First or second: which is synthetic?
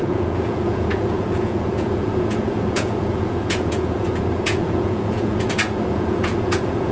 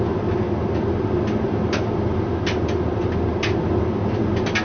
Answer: first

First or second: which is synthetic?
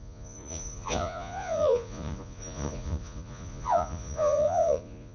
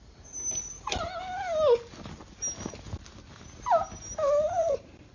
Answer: first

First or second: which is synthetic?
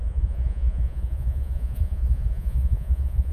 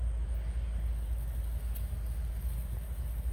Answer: first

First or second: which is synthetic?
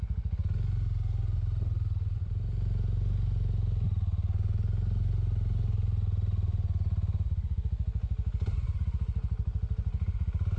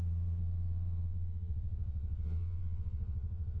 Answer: second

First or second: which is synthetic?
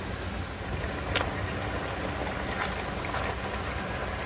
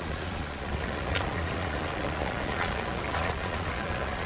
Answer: second